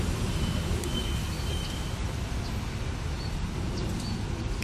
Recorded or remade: recorded